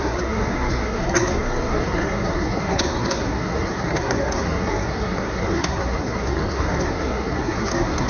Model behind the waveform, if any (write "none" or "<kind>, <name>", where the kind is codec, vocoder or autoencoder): codec, SNAC